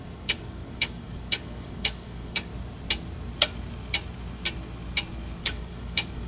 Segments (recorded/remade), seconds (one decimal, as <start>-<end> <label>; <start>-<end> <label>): 0.0-2.5 remade; 2.5-5.4 recorded; 5.4-6.3 remade